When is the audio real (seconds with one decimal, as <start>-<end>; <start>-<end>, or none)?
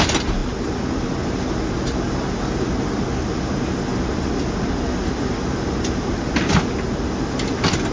0.0-7.9